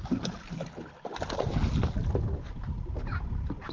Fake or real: real